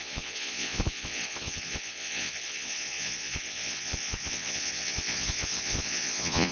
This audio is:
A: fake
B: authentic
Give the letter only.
A